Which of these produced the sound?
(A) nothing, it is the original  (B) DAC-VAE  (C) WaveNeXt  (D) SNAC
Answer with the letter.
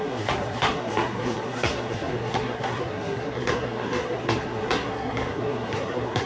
D